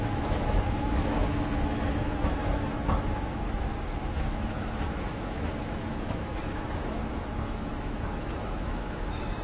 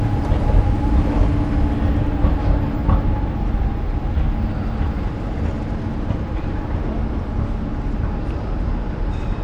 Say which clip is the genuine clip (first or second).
second